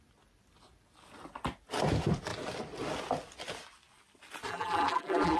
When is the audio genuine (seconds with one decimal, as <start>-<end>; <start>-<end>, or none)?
0.0-4.5